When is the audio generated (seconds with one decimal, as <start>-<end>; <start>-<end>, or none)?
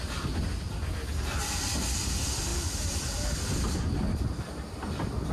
none